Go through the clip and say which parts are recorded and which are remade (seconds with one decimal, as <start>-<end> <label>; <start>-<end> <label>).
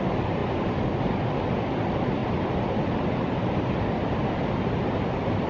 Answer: 0.0-0.4 remade; 0.4-1.6 recorded; 1.6-2.2 remade; 2.2-5.1 recorded; 5.1-5.5 remade